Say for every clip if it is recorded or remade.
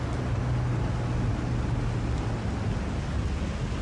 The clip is recorded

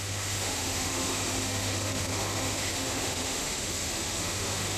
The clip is remade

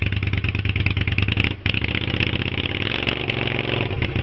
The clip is recorded